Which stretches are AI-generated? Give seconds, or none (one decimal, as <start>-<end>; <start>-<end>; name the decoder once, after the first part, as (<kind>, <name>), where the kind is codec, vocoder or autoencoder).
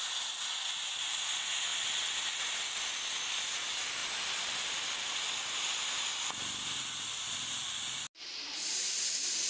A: none